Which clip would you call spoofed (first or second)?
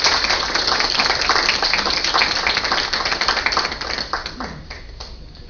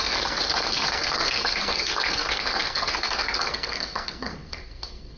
second